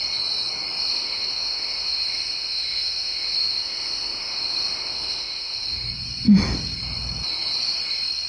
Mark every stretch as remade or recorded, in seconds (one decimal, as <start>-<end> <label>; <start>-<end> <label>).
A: 0.0-0.9 recorded; 0.9-5.9 remade; 5.9-8.3 recorded